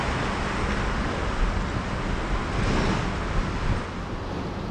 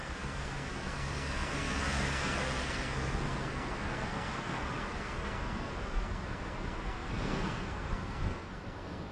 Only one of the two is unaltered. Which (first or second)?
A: first